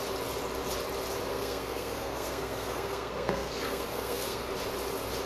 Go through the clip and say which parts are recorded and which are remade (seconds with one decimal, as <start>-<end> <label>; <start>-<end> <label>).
0.0-1.3 recorded; 1.3-4.5 remade; 4.5-5.3 recorded